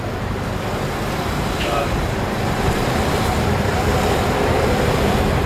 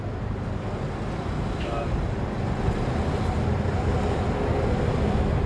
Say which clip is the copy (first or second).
first